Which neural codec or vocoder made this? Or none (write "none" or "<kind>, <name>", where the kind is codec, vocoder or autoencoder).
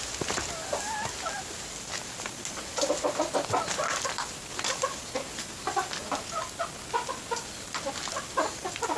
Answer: none